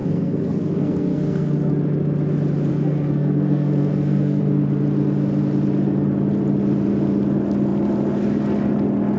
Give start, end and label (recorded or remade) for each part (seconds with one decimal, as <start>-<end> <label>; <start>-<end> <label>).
0.0-1.7 remade; 1.7-2.7 recorded; 2.7-4.4 remade; 4.4-9.2 recorded